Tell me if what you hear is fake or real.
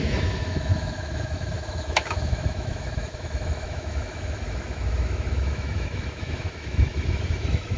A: fake